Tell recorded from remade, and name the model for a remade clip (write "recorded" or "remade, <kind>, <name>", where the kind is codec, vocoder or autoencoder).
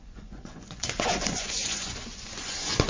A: remade, vocoder, Vocos